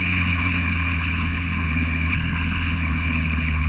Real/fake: fake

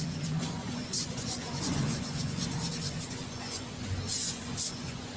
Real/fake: fake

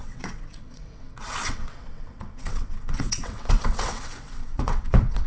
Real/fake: fake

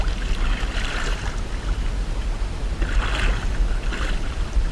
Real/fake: real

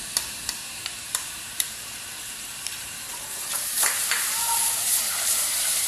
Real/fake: fake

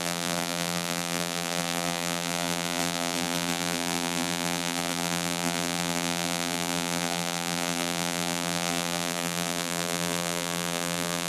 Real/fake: fake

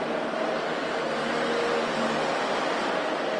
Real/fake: real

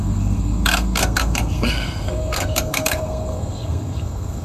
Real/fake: fake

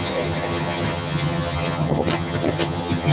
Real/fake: fake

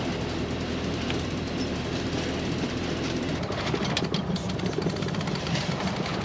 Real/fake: fake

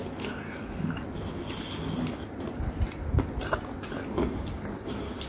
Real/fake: real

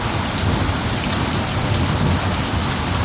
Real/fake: real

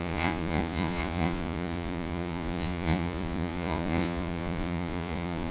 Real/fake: fake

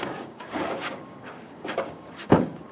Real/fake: fake